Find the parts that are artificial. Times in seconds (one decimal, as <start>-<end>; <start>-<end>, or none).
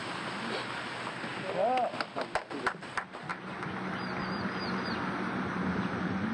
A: none